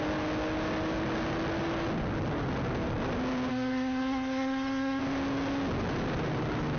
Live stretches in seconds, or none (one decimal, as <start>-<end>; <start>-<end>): 0.0-3.5; 5.0-6.8